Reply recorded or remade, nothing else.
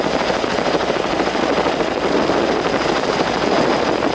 recorded